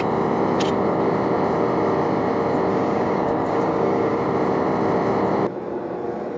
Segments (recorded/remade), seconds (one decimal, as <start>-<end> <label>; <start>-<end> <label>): 0.0-2.7 recorded; 2.7-4.2 remade; 4.2-6.4 recorded